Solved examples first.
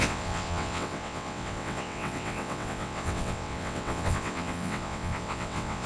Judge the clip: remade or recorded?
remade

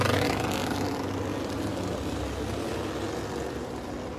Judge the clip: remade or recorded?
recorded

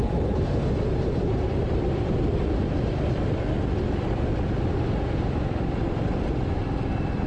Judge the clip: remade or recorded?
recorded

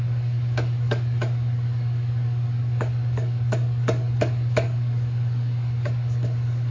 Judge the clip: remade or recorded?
remade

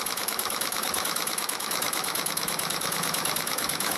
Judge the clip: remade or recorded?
remade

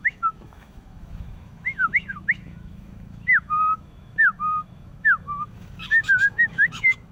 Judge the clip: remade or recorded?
remade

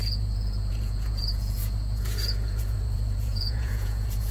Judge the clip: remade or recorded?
remade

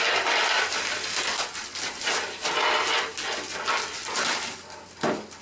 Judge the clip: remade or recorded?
recorded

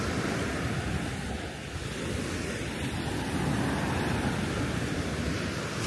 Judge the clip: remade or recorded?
recorded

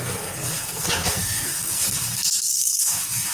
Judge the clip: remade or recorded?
remade